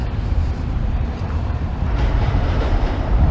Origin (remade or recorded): remade